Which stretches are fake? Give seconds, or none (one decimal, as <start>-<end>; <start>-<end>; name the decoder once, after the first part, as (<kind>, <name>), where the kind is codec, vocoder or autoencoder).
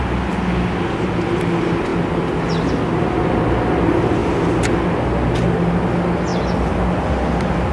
none